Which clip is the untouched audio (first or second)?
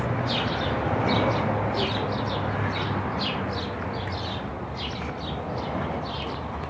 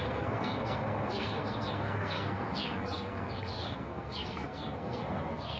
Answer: first